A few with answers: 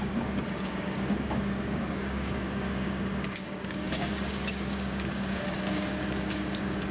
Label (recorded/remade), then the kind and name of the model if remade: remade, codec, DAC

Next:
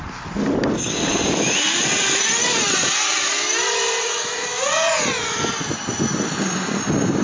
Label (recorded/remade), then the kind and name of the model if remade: recorded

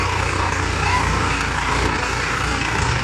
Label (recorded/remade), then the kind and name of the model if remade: remade, codec, DAC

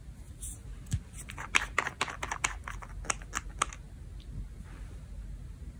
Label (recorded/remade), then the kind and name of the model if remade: recorded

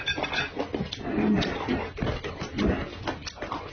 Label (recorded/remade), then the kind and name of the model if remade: recorded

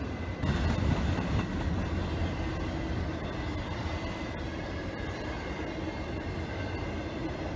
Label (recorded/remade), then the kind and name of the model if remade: recorded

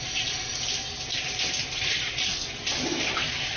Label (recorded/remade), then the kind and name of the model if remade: recorded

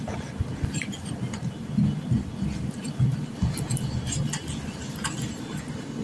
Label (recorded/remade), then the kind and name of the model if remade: recorded